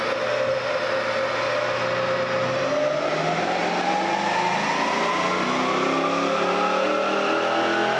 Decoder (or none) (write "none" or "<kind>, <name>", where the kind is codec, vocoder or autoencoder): none